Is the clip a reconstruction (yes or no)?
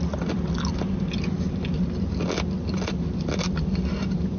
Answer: no